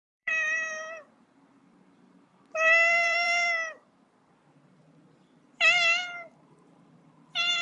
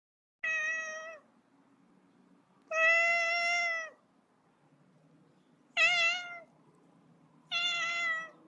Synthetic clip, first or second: first